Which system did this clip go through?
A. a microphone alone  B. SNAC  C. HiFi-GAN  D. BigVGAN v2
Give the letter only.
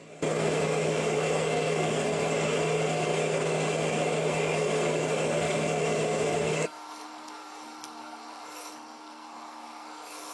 B